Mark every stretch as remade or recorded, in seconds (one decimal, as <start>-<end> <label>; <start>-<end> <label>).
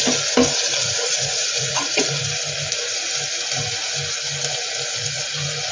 0.0-0.8 recorded; 0.8-2.2 remade; 2.2-5.7 recorded